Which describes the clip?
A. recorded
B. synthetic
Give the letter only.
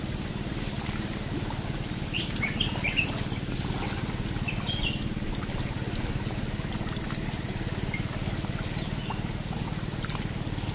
A